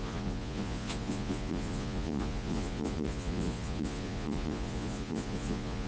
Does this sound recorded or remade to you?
remade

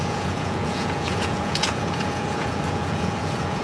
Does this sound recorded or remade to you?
remade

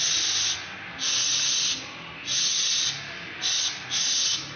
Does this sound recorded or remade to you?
recorded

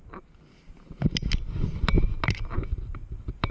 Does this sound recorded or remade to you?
recorded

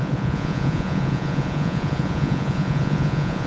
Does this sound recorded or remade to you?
remade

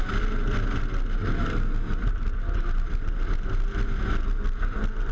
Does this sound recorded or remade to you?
recorded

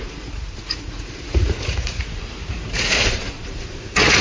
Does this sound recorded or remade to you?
remade